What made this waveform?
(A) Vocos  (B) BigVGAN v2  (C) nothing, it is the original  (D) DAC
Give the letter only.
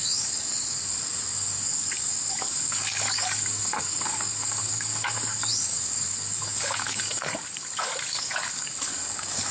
D